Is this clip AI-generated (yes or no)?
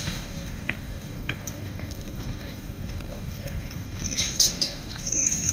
yes